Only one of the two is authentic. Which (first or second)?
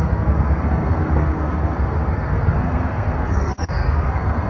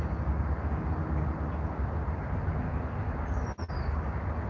second